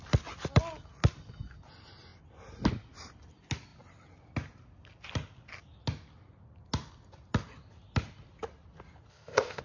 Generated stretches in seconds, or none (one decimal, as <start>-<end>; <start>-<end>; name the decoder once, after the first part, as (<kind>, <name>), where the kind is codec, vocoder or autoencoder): 9.1-9.6 (codec, ZipCodec)